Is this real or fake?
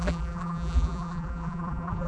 fake